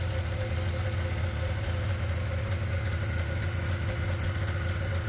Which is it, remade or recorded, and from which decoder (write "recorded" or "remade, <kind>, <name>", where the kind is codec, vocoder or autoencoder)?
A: recorded